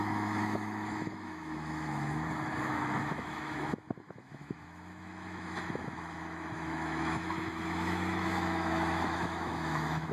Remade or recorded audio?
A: remade